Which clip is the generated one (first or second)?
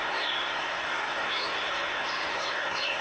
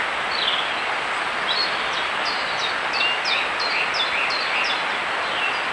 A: first